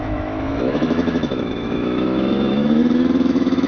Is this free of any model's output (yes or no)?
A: no